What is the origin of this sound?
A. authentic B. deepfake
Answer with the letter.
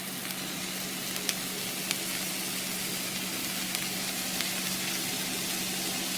A